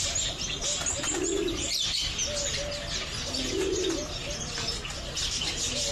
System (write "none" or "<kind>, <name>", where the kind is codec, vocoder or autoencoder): none